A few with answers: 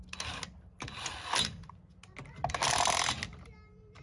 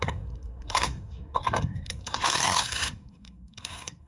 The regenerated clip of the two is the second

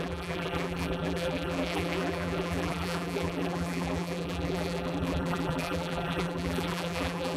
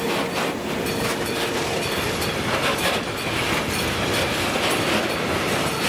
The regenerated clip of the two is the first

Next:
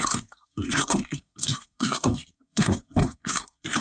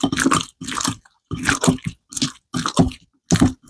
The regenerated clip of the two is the first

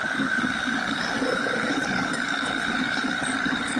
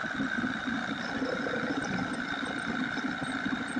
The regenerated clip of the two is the first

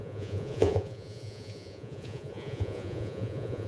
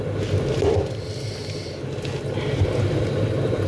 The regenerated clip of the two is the first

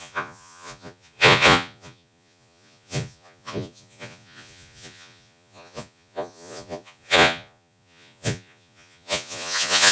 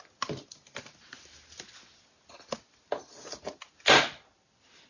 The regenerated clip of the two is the first